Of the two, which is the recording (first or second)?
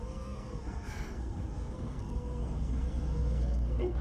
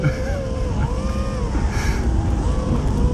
second